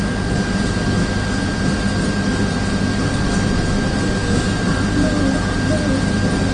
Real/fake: real